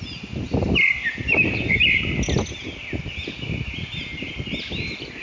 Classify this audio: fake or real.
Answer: real